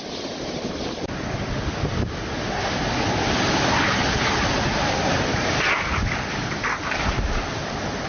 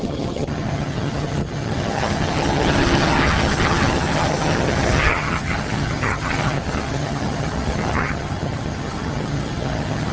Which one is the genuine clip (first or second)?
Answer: first